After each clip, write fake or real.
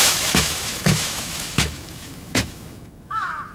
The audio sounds fake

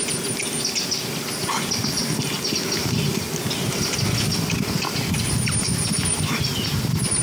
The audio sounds real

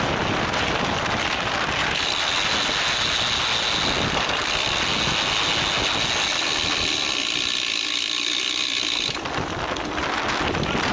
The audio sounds real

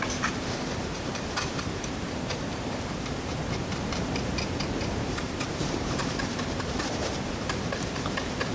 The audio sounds fake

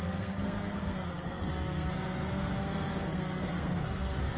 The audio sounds fake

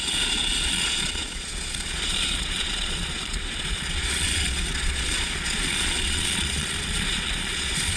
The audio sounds fake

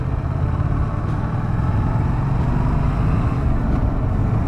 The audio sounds real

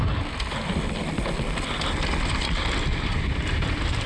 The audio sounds real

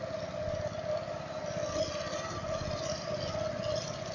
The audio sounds real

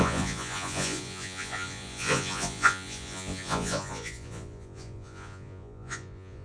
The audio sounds fake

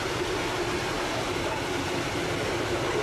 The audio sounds real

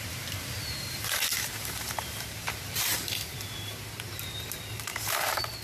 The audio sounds fake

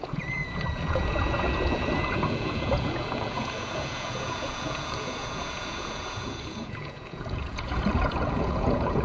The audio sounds fake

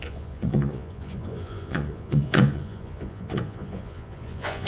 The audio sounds fake